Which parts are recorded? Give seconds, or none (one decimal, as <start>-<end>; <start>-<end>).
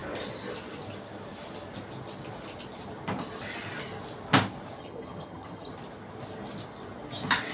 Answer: 0.0-4.8; 5.7-7.5